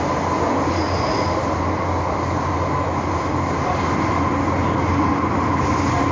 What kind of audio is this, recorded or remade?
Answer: recorded